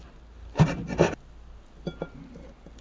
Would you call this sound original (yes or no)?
yes